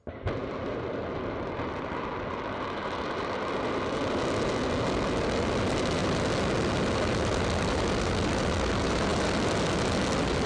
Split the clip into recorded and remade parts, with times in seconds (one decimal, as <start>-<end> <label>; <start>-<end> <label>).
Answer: 0.0-10.5 recorded